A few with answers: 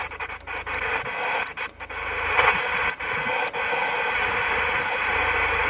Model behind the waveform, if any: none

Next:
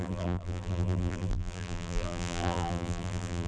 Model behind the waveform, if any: vocoder, BigVGAN v2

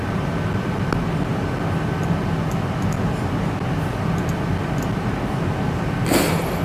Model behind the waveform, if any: none